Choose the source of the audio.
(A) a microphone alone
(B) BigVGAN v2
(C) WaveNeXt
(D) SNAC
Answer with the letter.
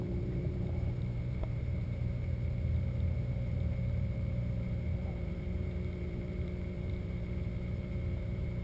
B